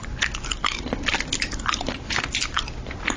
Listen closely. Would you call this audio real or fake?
real